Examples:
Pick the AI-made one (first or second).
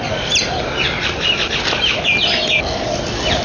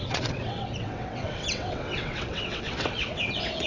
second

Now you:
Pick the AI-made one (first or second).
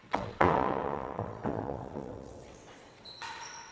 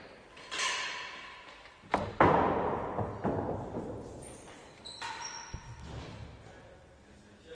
first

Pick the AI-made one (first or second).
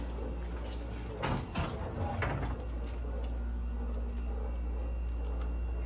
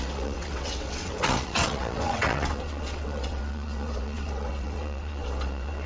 second